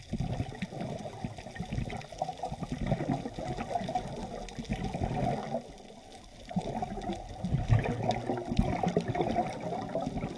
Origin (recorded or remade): recorded